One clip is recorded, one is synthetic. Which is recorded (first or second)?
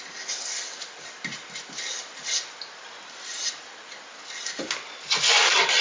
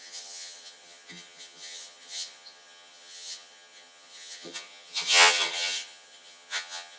first